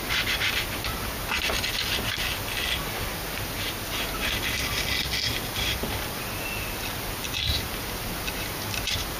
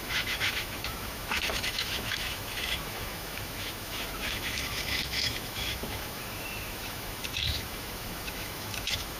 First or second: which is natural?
first